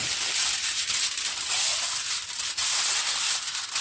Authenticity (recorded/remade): recorded